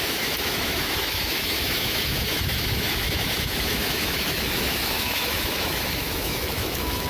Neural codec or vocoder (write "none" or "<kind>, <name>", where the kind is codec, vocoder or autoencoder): autoencoder, DAC-VAE